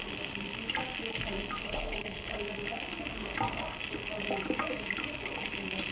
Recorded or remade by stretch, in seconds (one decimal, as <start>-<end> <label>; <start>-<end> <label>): 0.0-1.6 recorded; 1.6-2.4 remade; 2.4-5.9 recorded